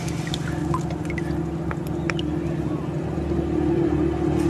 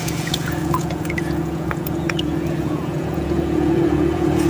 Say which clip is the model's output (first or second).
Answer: second